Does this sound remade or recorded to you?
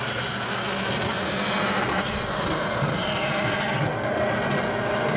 recorded